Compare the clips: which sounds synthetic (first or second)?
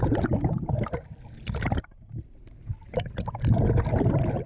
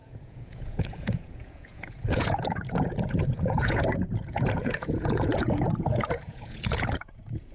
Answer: second